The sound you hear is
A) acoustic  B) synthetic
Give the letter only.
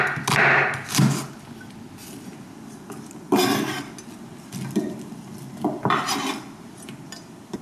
A